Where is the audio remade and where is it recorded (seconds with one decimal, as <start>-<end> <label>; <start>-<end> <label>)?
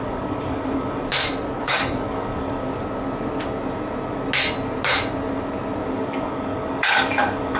0.0-1.1 remade; 1.1-1.6 recorded; 1.6-2.6 remade; 2.6-5.9 recorded; 5.9-7.6 remade